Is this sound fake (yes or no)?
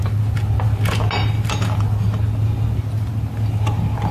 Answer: no